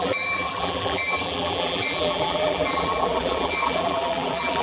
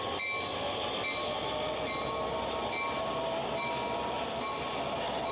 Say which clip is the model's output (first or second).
first